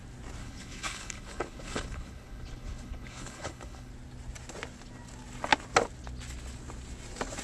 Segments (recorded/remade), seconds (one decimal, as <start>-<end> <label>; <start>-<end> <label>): 0.0-0.4 recorded; 0.4-3.9 remade; 3.9-7.4 recorded